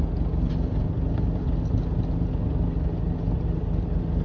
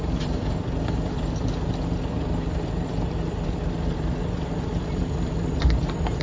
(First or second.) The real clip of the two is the first